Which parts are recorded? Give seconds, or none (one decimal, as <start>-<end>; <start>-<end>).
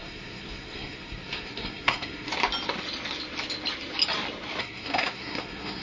2.3-4.6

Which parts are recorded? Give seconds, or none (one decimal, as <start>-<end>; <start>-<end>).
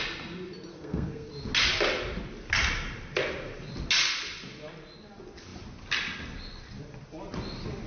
0.0-0.7; 1.3-7.9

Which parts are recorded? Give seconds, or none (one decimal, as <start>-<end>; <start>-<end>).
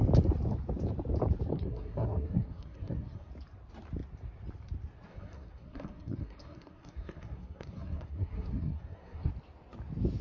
0.0-1.5; 3.3-5.1; 9.3-10.2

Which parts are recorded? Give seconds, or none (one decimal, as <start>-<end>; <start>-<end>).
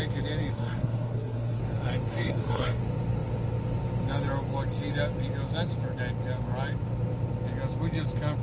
0.0-0.5; 1.6-2.1; 2.8-8.4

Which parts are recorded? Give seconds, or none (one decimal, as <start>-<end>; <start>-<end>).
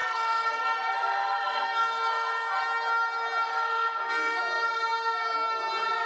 2.6-3.5; 4.4-6.1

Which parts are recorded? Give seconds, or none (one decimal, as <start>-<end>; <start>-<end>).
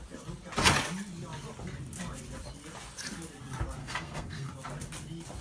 0.0-3.8; 4.5-5.4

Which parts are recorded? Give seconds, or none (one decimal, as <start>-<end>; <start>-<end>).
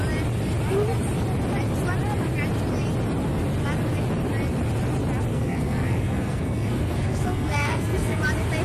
0.0-5.3; 8.2-8.6